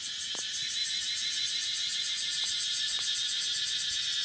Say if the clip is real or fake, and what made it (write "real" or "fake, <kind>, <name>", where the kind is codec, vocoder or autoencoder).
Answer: real